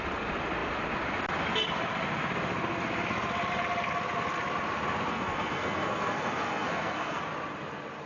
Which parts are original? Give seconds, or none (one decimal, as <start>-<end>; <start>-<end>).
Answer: 0.0-5.1; 7.2-8.1